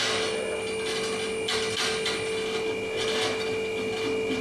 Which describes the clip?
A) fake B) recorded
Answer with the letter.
B